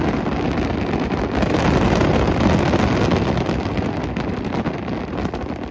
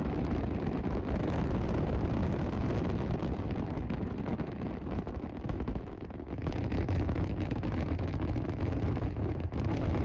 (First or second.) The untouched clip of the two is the first